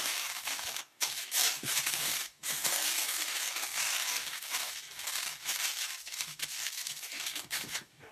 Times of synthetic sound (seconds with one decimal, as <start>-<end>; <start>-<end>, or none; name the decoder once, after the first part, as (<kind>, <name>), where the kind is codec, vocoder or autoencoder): 0.0-8.1 (codec, DAC)